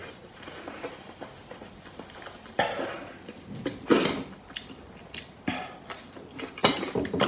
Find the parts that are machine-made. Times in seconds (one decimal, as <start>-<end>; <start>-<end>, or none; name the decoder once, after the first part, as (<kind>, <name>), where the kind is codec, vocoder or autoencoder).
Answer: 0.0-1.3 (vocoder, BigVGAN v2); 6.6-7.3